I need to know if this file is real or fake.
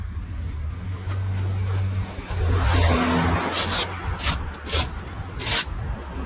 real